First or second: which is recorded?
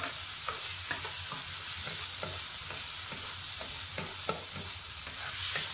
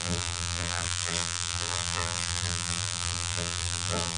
first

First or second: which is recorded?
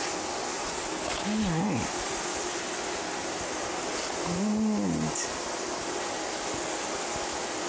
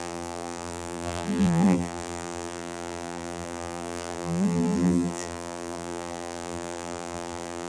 first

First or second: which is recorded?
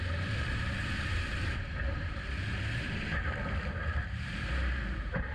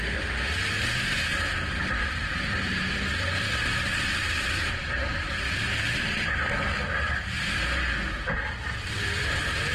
second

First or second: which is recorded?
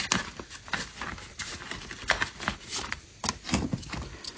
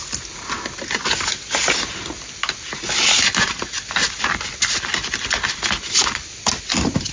second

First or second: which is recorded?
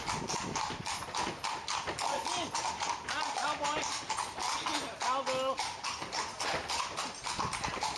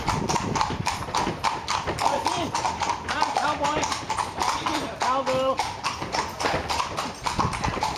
first